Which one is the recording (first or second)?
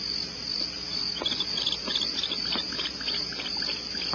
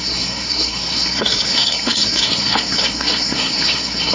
first